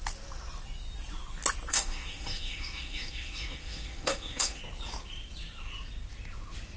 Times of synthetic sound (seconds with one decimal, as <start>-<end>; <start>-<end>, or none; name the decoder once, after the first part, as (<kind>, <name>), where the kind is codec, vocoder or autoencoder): 1.7-4.6 (autoencoder, DAC-VAE)